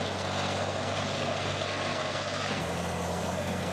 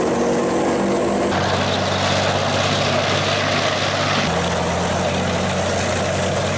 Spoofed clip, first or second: first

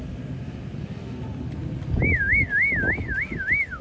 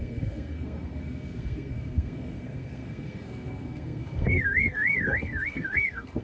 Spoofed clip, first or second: second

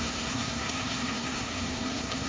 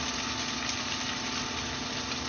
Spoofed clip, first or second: first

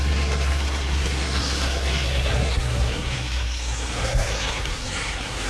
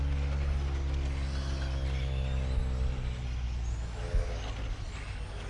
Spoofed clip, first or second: first